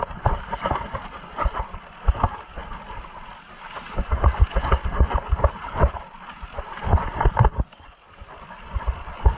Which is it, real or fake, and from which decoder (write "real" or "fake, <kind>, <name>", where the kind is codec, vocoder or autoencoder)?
real